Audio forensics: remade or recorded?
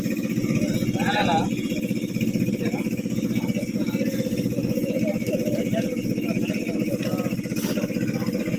recorded